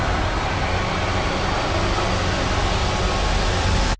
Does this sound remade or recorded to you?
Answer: recorded